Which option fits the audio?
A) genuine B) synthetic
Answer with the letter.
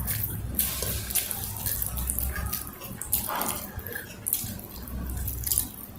A